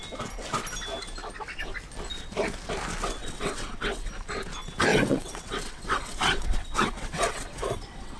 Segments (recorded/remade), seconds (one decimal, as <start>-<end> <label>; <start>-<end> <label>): 0.0-3.2 recorded; 3.2-4.1 remade; 4.1-4.9 recorded; 4.9-8.2 remade